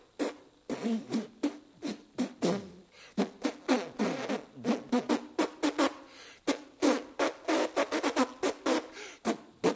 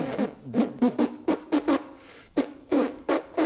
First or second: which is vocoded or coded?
second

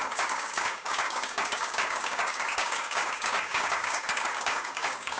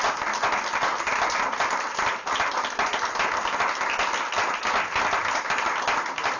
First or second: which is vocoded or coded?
first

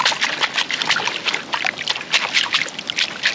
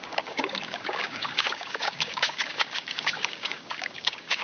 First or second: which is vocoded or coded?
second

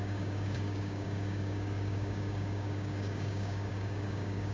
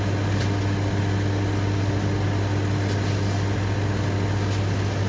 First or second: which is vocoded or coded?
first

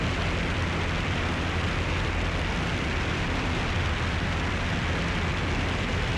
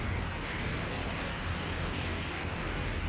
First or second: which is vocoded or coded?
second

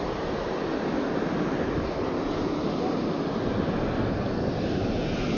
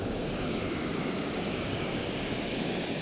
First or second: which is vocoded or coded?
second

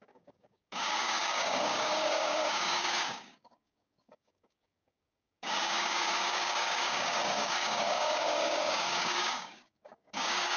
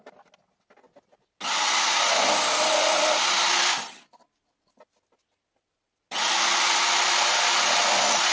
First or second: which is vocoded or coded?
first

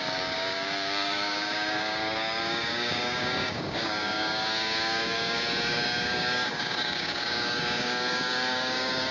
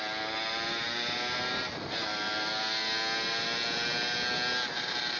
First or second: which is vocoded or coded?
first